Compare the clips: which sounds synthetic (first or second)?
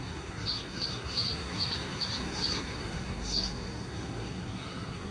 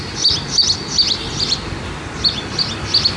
first